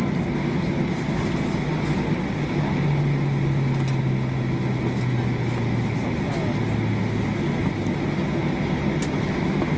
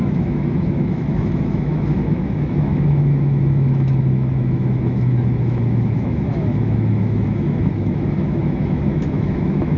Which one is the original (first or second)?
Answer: first